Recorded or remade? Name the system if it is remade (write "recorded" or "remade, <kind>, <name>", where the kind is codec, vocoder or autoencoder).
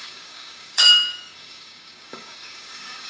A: remade, codec, DAC